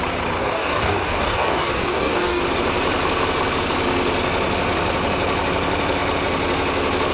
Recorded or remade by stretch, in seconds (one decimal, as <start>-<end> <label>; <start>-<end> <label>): 0.0-0.4 recorded; 0.4-2.4 remade; 2.4-7.1 recorded